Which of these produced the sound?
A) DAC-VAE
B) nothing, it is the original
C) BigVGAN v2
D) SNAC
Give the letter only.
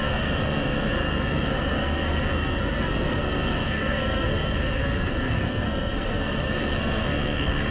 D